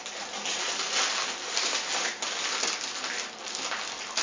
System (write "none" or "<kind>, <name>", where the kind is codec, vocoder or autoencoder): none